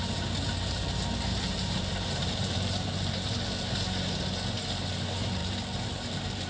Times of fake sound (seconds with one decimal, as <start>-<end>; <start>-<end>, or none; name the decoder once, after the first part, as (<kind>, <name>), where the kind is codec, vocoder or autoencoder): 1.3-3.7 (vocoder, BigVGAN v2); 5.4-6.5